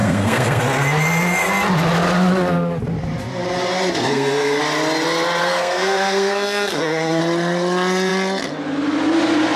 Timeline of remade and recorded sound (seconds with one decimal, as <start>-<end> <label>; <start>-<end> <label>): 0.0-0.6 remade; 0.6-4.0 recorded; 4.0-4.6 remade; 4.6-5.4 recorded; 5.4-7.2 remade; 7.2-9.6 recorded